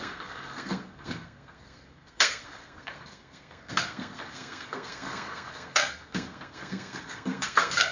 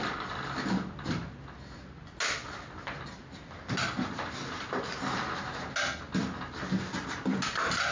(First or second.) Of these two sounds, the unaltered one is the second